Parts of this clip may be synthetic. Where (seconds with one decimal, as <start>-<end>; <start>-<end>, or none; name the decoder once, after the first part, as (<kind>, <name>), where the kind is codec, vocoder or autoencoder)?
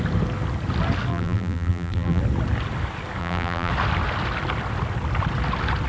1.1-2.2 (vocoder, BigVGAN v2); 3.2-3.7